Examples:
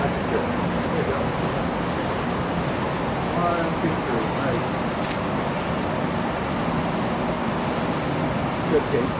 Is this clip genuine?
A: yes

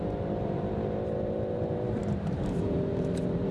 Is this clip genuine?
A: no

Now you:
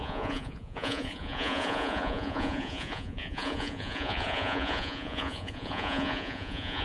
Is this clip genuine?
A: no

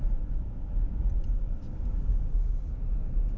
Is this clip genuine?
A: yes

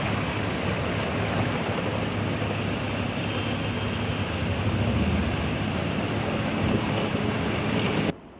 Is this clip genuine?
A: yes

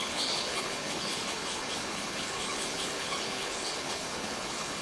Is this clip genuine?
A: no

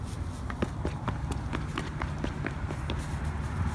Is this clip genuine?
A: yes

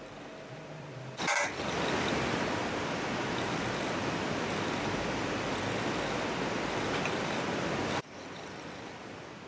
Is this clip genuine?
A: yes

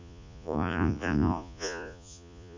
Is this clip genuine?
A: no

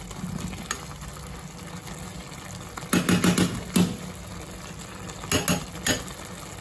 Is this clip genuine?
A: yes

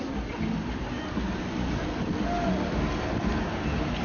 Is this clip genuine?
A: yes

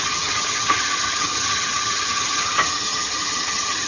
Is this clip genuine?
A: no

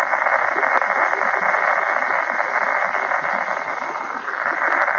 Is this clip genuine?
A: yes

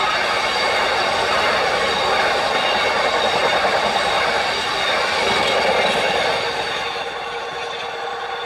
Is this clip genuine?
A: yes